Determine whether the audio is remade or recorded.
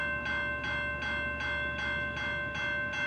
recorded